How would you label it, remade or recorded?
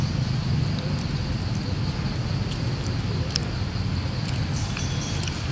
recorded